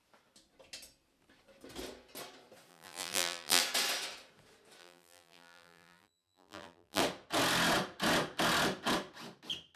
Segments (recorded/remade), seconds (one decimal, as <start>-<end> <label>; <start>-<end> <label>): 0.0-2.7 recorded; 2.7-3.6 remade; 3.6-4.8 recorded; 4.8-7.0 remade; 7.0-9.8 recorded